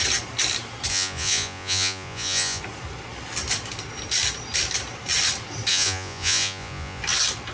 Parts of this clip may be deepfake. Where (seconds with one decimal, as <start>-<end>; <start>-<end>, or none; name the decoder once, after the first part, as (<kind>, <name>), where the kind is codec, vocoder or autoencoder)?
0.9-2.6 (vocoder, Vocos); 5.7-7.0